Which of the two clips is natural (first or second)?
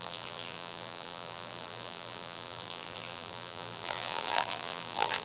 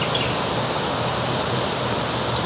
second